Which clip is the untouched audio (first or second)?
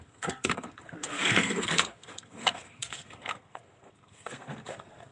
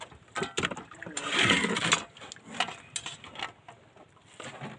second